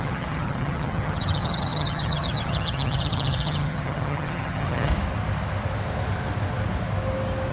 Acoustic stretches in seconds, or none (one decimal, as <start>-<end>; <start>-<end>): 4.9-7.5